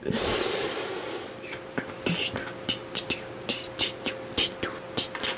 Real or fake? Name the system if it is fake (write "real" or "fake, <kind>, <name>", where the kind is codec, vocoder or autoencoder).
real